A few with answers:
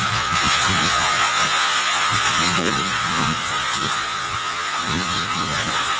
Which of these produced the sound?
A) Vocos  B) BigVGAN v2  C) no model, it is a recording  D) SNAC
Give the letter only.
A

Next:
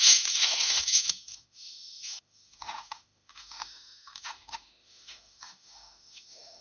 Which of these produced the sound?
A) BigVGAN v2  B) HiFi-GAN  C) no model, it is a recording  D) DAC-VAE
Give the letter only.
D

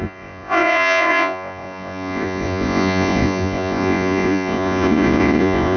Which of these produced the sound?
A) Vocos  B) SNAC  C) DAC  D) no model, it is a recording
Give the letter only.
A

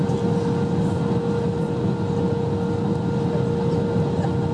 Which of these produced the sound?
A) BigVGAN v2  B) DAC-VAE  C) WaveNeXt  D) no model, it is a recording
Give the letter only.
D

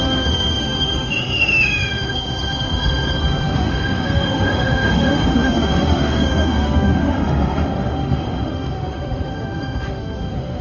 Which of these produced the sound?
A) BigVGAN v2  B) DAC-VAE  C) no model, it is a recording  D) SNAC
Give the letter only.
B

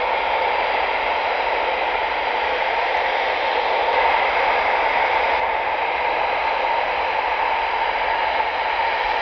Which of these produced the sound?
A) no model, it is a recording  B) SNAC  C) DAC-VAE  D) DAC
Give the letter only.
A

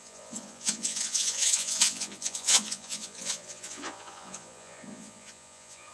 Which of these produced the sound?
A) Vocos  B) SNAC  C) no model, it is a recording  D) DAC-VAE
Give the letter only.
A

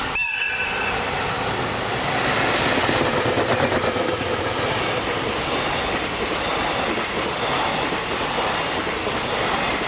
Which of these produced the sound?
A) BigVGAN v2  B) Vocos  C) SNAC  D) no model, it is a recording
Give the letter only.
D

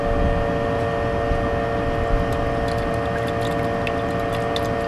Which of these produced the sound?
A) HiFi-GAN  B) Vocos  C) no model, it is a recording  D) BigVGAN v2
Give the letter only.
C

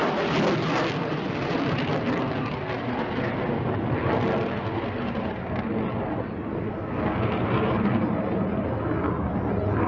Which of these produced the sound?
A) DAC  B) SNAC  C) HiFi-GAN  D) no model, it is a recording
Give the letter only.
D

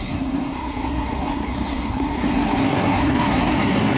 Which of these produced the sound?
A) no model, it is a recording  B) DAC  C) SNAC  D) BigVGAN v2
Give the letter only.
C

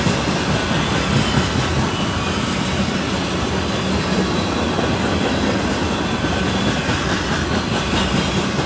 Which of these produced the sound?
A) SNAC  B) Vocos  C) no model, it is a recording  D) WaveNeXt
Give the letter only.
C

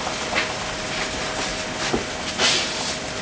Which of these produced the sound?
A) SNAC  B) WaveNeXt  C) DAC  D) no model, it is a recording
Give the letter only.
D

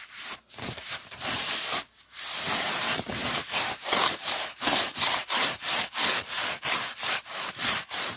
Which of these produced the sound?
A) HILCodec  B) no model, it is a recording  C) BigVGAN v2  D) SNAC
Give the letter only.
C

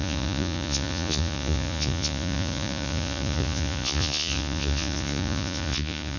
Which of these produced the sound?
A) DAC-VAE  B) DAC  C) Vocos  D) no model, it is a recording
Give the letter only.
C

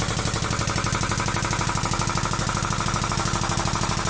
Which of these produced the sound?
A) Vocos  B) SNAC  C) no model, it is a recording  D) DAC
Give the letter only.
C